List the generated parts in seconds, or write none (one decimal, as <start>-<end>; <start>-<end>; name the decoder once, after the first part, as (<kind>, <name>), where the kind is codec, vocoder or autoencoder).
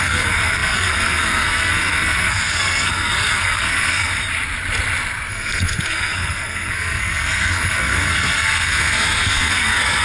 0.0-4.1 (codec, SNAC); 5.3-10.0